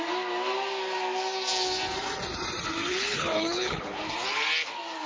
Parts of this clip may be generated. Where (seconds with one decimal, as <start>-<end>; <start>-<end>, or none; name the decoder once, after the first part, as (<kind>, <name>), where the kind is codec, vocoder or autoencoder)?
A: 2.9-4.0 (codec, HILCodec)